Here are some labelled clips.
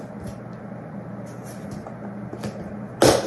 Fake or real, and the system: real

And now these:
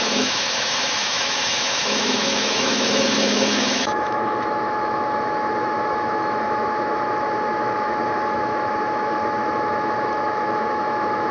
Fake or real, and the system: fake, autoencoder, DAC-VAE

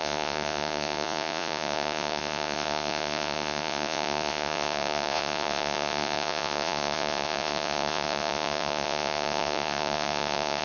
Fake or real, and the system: fake, vocoder, Vocos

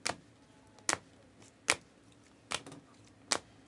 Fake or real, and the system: real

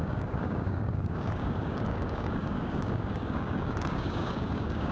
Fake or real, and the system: fake, codec, DAC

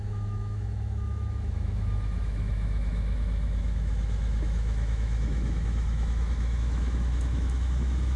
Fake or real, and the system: fake, autoencoder, DAC-VAE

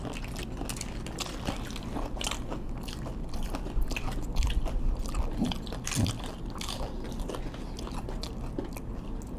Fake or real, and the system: real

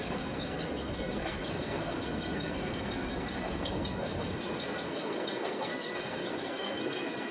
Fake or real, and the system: fake, codec, SNAC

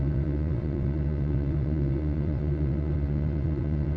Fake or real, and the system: fake, vocoder, WaveNeXt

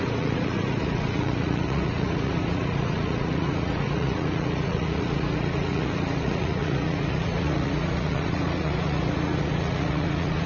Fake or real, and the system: fake, vocoder, Vocos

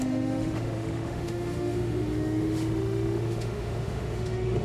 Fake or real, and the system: fake, autoencoder, DAC-VAE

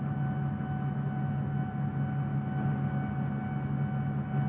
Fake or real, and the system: real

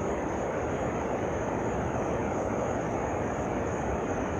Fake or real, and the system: fake, codec, DAC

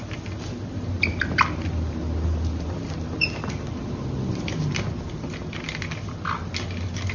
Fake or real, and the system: real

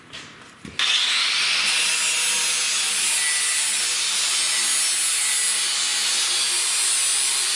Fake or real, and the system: real